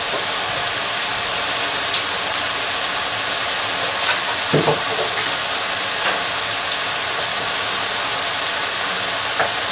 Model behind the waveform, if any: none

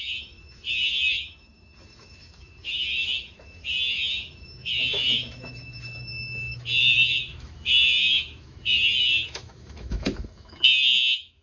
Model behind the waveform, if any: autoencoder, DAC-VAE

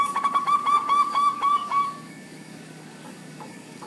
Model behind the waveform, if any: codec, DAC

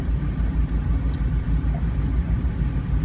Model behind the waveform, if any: vocoder, BigVGAN v2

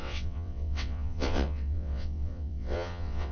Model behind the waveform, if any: vocoder, WaveNeXt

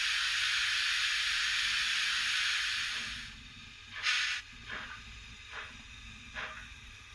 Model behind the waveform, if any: none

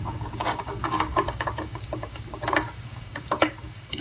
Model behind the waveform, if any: codec, DAC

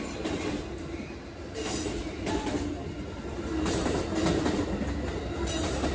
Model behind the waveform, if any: none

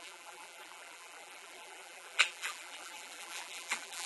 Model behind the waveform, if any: vocoder, BigVGAN v2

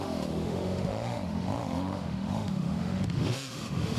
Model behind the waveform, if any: autoencoder, DAC-VAE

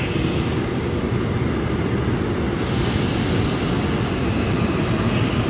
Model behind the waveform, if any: none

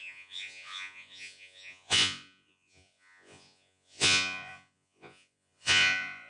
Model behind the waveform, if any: vocoder, Vocos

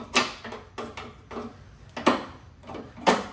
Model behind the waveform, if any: none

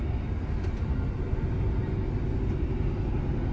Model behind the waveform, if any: none